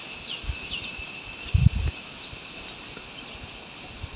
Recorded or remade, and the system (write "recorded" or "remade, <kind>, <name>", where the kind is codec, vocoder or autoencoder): recorded